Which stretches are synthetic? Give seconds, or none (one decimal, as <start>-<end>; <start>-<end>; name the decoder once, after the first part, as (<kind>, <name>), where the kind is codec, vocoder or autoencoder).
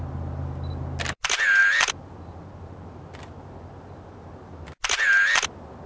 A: none